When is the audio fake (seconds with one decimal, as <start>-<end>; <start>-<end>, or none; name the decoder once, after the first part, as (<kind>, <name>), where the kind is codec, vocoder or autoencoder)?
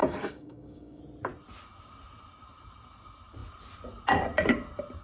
0.0-1.0 (codec, DAC)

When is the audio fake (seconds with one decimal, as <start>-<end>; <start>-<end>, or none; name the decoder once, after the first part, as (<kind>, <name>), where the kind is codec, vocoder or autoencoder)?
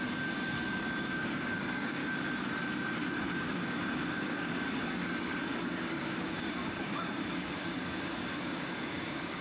0.0-2.0 (codec, DAC); 3.2-9.4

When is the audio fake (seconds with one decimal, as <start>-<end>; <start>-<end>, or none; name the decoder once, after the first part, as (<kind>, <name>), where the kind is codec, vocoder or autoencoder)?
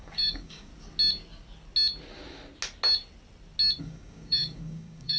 0.0-0.7 (codec, DAC); 3.8-5.2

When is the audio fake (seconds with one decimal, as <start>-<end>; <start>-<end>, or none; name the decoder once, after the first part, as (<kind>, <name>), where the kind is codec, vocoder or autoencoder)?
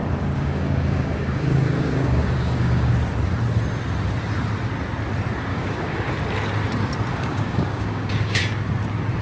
0.0-2.9 (codec, DAC); 5.5-6.1; 7.1-8.4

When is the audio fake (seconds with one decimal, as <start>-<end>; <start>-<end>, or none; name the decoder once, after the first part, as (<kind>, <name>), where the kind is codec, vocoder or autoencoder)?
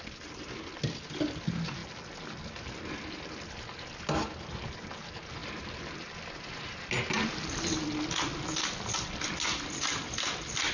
none